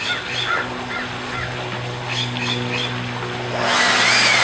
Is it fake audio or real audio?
real